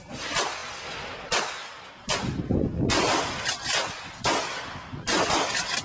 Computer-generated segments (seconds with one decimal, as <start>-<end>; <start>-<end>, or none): none